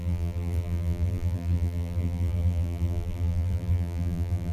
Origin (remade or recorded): remade